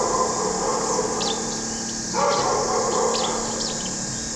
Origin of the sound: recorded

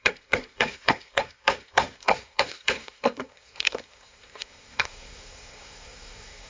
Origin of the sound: remade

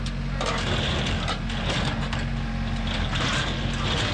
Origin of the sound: recorded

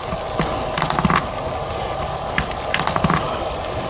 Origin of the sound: recorded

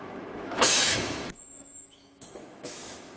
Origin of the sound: remade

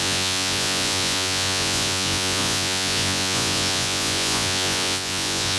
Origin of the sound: remade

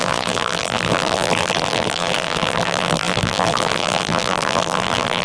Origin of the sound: remade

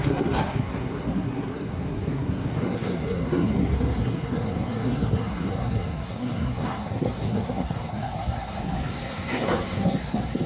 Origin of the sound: remade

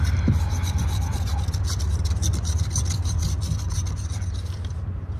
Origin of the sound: remade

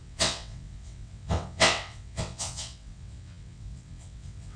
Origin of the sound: remade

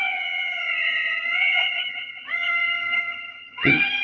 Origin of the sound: remade